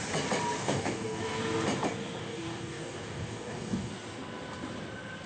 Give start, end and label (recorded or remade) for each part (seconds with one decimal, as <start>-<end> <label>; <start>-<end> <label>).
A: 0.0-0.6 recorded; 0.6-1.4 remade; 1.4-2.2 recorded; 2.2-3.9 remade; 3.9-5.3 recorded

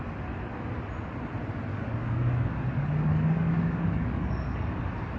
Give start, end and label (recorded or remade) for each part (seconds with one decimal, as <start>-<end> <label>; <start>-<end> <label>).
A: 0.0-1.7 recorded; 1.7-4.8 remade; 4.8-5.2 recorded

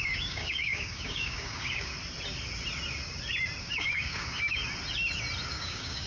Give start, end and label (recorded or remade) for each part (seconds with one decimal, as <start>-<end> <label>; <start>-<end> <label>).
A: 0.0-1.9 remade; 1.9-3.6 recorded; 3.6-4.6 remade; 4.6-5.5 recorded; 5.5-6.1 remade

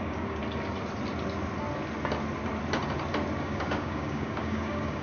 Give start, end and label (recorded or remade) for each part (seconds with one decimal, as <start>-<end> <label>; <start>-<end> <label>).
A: 0.0-0.4 remade; 0.4-3.4 recorded; 3.4-5.0 remade